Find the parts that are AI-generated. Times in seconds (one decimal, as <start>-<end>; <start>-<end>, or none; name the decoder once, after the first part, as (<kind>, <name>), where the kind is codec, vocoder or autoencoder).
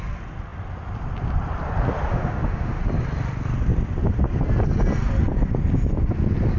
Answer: 2.1-2.8 (autoencoder, DAC-VAE)